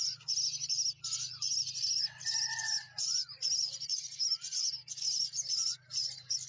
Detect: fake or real real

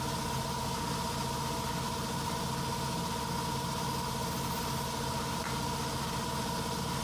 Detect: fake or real real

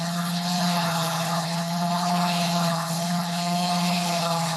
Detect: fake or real fake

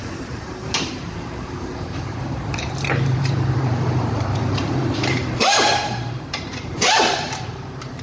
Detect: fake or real fake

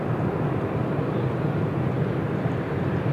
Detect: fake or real real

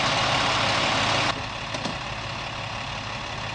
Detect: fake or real real